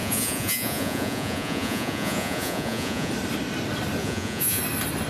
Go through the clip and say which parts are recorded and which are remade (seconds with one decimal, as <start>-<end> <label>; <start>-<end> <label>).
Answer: 0.0-3.1 remade; 3.1-4.0 recorded; 4.0-4.6 remade; 4.6-5.1 recorded